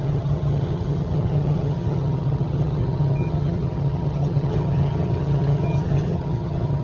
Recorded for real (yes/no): no